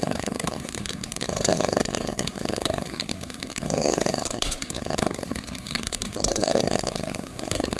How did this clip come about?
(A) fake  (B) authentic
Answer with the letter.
A